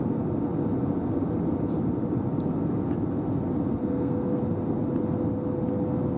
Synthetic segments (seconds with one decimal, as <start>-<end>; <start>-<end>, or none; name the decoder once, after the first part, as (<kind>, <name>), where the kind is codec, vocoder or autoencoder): 3.8-4.4 (codec, SNAC)